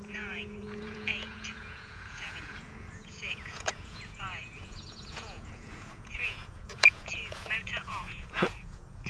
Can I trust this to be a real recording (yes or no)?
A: no